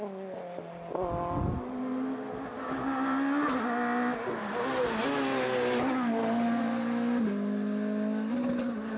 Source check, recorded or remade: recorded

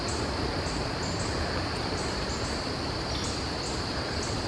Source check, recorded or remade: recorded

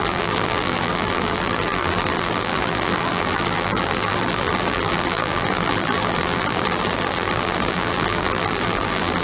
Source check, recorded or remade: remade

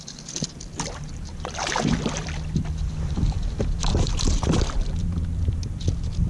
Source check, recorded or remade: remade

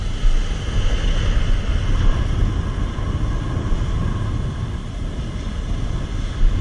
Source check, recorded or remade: recorded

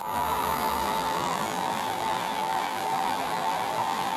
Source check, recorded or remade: remade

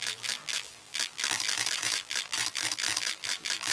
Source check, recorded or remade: remade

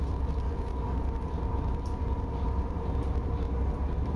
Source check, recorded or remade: remade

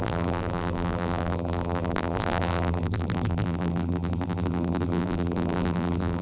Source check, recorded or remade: remade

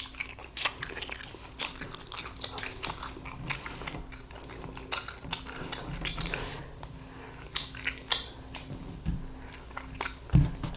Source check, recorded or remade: recorded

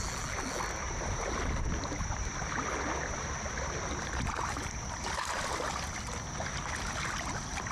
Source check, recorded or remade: recorded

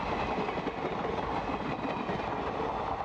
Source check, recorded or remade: recorded